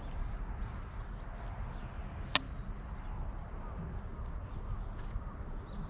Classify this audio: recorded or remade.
recorded